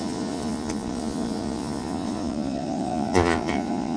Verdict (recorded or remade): remade